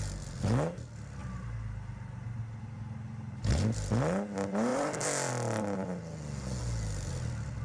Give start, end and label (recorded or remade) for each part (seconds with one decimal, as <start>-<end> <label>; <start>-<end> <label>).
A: 0.0-1.2 recorded; 1.2-3.5 remade; 3.5-4.7 recorded; 4.7-5.3 remade; 5.3-7.6 recorded